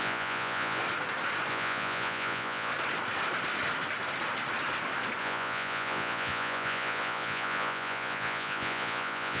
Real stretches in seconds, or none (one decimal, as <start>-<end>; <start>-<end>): 0.8-1.5; 2.7-5.2